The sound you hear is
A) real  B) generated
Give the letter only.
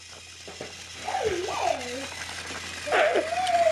A